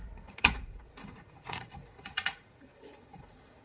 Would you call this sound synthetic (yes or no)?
yes